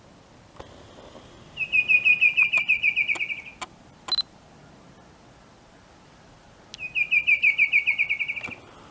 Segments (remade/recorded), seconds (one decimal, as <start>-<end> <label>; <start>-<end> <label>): 0.0-8.9 recorded

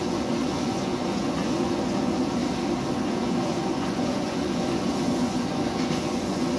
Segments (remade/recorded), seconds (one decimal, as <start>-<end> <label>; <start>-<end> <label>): 0.0-2.4 remade; 2.4-3.1 recorded; 3.1-6.6 remade

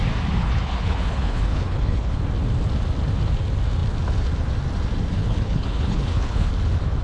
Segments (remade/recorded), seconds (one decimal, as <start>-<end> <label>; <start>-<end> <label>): 0.0-0.4 recorded; 0.4-2.2 remade; 2.2-5.2 recorded; 5.2-6.5 remade; 6.5-7.0 recorded

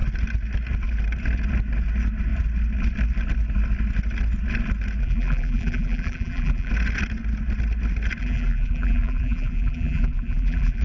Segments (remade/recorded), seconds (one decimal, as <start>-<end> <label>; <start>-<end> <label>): 0.0-5.0 recorded; 5.0-6.7 remade; 6.7-8.2 recorded; 8.2-10.8 remade

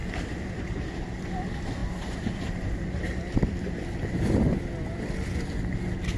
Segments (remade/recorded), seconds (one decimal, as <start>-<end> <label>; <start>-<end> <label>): 0.0-0.6 remade; 0.6-1.8 recorded; 1.8-3.7 remade; 3.7-6.2 recorded

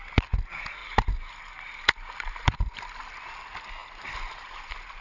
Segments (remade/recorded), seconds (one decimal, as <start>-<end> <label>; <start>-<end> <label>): 0.0-0.8 recorded; 0.8-3.1 remade; 3.1-5.0 recorded